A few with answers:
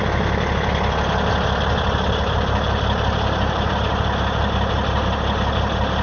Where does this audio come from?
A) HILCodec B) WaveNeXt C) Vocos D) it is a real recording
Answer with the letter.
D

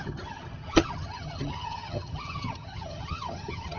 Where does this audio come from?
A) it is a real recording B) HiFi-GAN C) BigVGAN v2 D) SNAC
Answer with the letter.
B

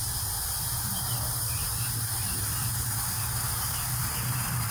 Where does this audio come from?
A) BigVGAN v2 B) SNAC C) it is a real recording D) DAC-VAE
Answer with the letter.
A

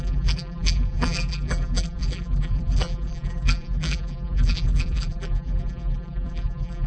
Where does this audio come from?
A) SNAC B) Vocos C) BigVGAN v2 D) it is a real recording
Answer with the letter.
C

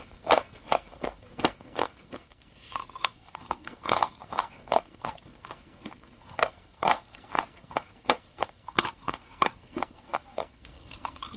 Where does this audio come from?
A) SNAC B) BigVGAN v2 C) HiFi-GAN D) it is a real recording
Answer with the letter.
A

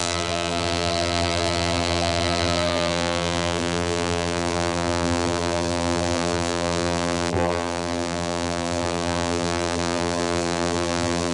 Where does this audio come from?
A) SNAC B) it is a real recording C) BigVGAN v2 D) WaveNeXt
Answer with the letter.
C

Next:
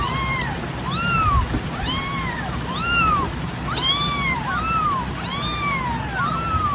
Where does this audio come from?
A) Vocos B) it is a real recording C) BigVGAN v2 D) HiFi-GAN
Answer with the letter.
B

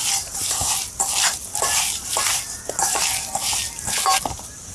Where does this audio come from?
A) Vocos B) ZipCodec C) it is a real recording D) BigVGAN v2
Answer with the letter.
C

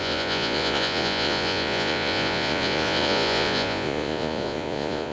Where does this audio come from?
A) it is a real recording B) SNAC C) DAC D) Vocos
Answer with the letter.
D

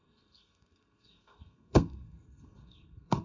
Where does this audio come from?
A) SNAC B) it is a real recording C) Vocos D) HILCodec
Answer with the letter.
A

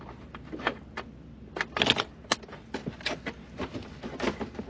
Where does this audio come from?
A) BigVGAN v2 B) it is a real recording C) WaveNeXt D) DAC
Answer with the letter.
B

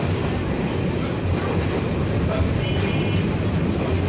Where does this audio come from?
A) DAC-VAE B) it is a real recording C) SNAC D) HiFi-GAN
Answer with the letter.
B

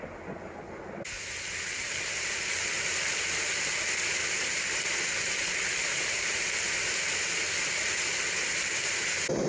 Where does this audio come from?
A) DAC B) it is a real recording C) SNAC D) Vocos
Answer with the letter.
B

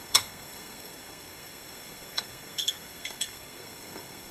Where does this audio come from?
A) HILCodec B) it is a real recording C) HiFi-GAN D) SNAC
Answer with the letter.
D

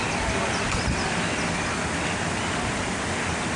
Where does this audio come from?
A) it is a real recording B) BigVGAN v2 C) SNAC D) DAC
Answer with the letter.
A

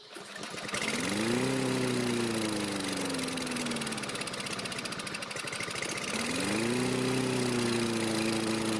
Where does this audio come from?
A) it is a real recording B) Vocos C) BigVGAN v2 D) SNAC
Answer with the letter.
A